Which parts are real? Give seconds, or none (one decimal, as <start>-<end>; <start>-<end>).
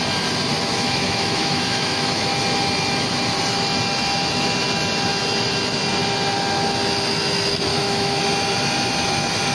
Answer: 0.0-0.7; 2.3-7.7; 8.2-9.5